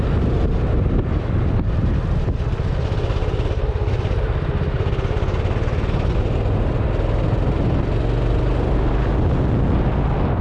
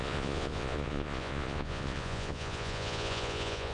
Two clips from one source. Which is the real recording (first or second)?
first